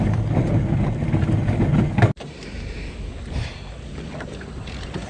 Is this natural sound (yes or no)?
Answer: yes